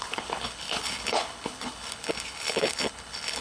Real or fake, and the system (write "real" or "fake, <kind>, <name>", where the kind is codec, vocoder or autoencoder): fake, codec, HILCodec